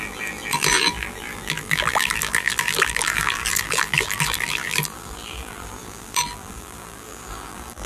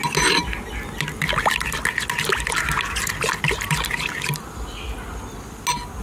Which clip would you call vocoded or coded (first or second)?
first